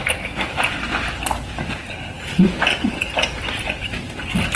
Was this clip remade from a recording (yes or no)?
no